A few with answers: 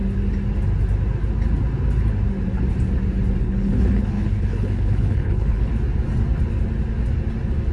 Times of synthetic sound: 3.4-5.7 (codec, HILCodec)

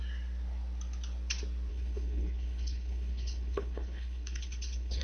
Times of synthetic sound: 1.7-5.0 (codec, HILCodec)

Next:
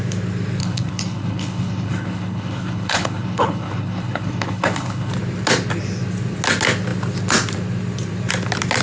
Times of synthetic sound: 0.6-5.1 (codec, HILCodec)